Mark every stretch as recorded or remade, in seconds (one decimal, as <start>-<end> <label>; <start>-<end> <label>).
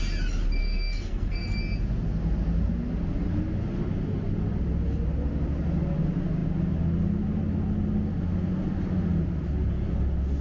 0.0-0.6 recorded; 0.6-1.6 remade; 1.6-10.4 recorded